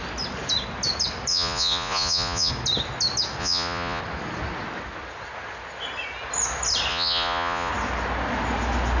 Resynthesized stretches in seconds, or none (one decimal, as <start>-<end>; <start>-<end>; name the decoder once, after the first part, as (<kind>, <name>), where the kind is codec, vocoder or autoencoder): 1.3-2.5 (vocoder, Vocos); 3.4-4.0; 6.9-7.7